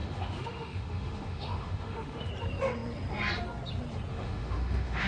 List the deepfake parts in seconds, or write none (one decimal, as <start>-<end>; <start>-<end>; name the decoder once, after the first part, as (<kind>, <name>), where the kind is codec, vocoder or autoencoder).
0.0-2.3 (autoencoder, DAC-VAE); 4.1-5.1